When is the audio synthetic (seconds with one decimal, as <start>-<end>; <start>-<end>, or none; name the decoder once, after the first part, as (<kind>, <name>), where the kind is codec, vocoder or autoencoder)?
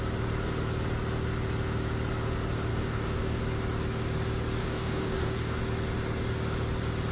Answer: 2.7-3.4 (codec, DAC); 4.6-5.6